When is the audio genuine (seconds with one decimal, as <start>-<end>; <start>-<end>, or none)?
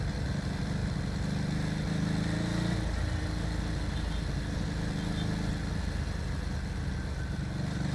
0.0-7.9